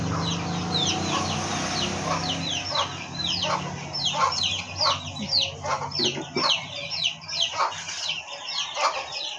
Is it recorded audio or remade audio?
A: recorded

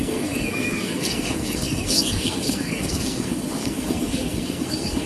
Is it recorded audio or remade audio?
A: remade